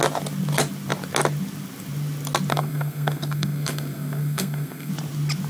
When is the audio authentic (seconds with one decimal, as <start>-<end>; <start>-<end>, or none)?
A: 0.0-2.5; 4.9-5.5